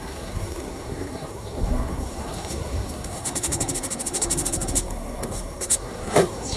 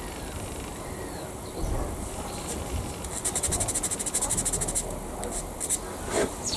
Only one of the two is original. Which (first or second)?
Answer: second